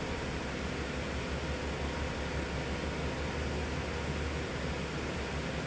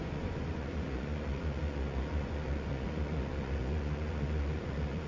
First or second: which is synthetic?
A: second